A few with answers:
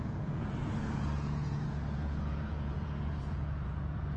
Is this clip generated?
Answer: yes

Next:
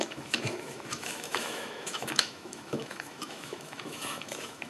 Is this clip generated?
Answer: yes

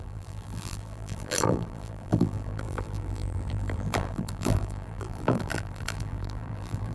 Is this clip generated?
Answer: yes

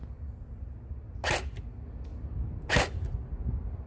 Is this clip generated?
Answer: no